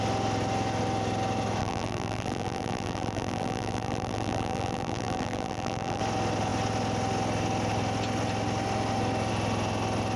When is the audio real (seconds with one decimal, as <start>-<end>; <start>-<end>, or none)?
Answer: 0.0-1.6; 6.0-10.2